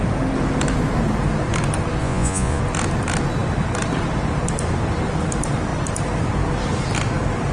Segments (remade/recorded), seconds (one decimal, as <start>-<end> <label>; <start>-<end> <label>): 0.0-2.0 recorded; 2.0-2.6 remade; 2.6-7.5 recorded